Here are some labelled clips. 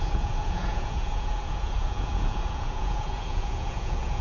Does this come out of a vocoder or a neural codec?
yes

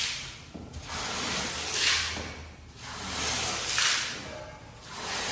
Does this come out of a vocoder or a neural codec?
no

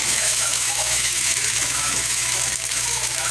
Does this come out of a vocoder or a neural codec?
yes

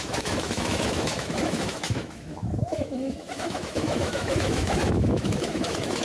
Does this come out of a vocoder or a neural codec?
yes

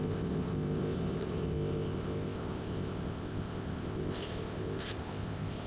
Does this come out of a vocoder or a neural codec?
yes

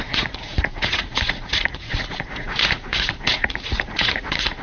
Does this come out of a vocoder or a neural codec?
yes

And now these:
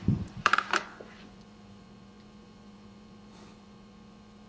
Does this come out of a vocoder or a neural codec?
yes